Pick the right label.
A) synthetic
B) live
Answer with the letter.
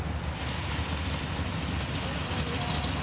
B